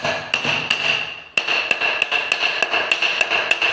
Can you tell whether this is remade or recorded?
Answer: recorded